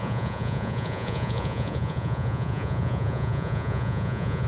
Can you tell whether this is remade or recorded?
remade